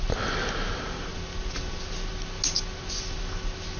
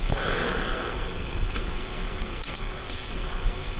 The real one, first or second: first